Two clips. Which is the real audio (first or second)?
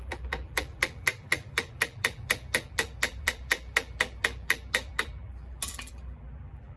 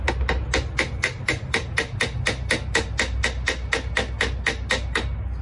second